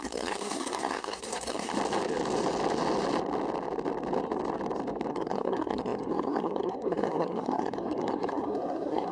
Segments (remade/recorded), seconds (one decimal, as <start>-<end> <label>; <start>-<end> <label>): 0.0-1.7 remade; 1.7-5.1 recorded; 5.1-9.1 remade